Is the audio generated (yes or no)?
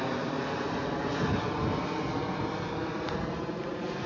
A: no